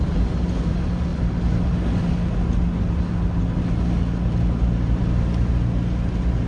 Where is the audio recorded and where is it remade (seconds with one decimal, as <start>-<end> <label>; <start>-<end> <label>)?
0.0-6.5 recorded